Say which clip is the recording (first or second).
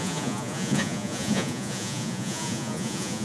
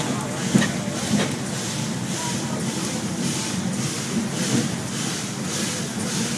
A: second